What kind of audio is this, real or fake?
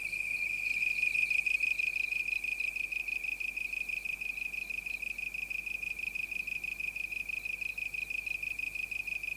real